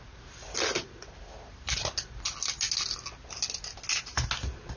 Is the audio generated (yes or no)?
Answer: no